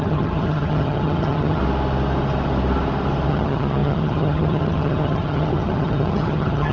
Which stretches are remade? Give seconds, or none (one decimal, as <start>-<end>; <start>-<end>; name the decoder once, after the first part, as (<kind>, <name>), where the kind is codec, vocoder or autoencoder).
0.0-1.6 (vocoder, HiFi-GAN); 3.3-6.7

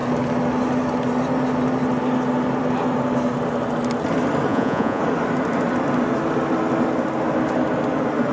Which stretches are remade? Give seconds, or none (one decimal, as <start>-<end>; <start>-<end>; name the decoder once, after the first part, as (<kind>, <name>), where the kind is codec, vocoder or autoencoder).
4.5-5.0 (vocoder, Vocos)

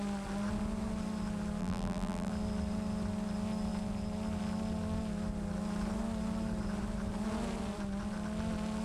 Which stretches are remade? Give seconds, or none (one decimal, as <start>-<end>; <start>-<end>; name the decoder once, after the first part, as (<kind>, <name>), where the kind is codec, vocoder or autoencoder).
1.6-2.3 (vocoder, BigVGAN v2)

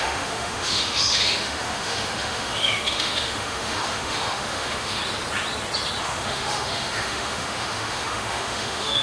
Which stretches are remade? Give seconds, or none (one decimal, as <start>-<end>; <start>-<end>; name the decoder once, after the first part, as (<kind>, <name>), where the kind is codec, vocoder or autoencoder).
0.0-5.0 (autoencoder, DAC-VAE); 6.0-9.0

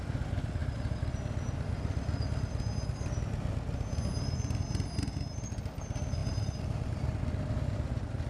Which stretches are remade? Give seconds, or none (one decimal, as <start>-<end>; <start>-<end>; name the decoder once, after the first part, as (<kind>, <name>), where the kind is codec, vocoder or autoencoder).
6.2-7.2 (vocoder, BigVGAN v2)

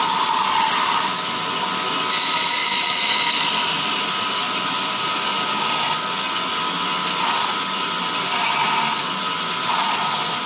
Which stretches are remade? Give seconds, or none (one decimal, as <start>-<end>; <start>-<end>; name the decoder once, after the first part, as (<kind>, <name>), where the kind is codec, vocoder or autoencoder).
2.6-3.4 (autoencoder, DAC-VAE)

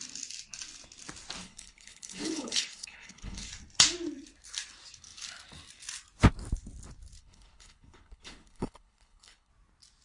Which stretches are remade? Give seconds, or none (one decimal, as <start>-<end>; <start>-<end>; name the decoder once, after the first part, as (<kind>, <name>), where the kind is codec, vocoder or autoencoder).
1.4-3.5 (codec, HILCodec); 7.2-9.5